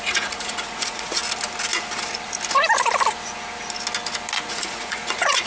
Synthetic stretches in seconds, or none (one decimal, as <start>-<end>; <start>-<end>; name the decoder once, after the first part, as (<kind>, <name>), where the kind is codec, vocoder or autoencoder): 0.0-1.2 (vocoder, Vocos); 4.5-5.5